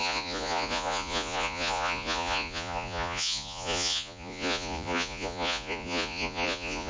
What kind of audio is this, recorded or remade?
remade